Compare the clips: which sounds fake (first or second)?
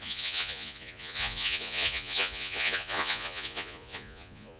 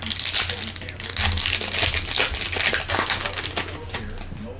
first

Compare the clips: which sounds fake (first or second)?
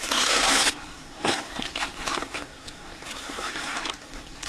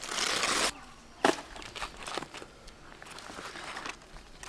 first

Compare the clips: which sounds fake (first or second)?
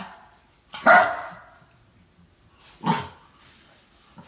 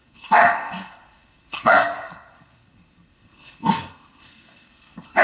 second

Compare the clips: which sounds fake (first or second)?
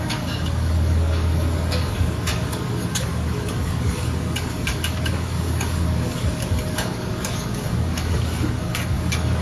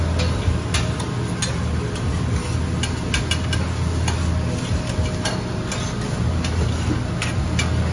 first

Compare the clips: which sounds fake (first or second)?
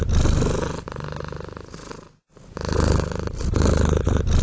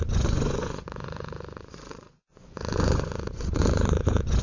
second